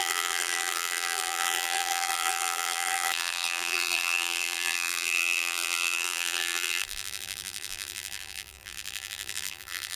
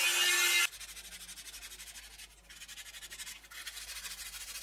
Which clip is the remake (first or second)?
first